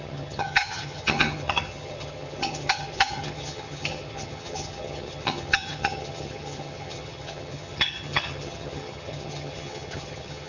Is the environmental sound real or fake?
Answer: fake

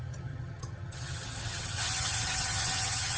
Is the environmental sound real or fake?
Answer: fake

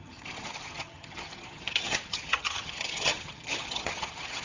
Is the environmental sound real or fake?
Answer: fake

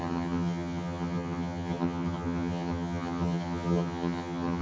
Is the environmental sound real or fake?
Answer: fake